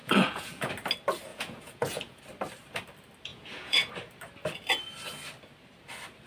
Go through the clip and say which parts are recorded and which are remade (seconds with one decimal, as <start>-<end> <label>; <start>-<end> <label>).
0.0-0.7 remade; 0.7-1.3 recorded; 1.3-2.2 remade; 2.2-3.3 recorded; 3.3-3.9 remade; 3.9-6.3 recorded